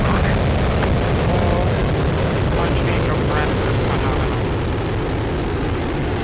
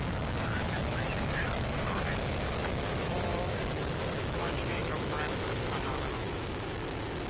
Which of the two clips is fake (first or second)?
second